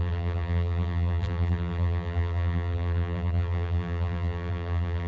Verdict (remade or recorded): remade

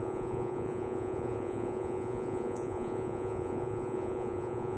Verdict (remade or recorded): remade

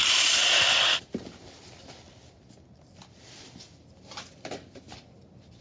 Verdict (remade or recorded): recorded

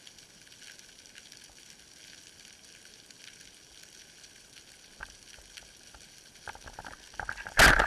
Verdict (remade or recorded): recorded